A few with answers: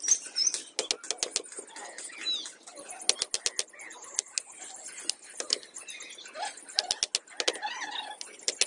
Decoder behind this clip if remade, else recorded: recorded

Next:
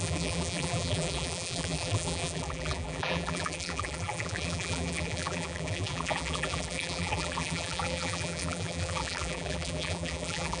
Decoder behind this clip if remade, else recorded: remade, vocoder, BigVGAN v2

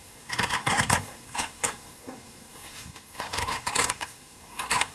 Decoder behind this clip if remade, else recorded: remade, codec, SNAC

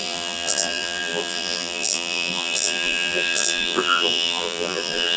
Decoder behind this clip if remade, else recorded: remade, vocoder, BigVGAN v2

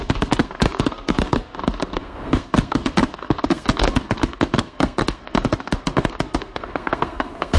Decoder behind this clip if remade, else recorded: remade, codec, SNAC